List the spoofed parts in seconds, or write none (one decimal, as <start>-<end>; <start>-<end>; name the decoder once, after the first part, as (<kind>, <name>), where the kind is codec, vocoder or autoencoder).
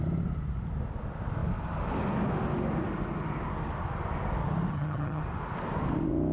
4.7-5.2 (vocoder, HiFi-GAN)